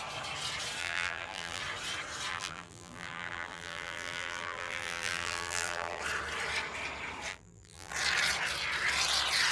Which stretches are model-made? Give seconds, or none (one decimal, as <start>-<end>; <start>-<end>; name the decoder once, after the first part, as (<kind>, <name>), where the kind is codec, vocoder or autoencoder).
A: 0.8-1.6 (vocoder, BigVGAN v2); 2.3-6.0; 7.3-7.9